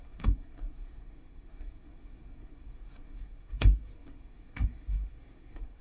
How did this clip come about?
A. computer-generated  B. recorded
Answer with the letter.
A